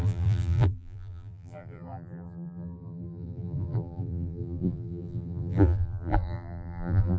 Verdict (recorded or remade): remade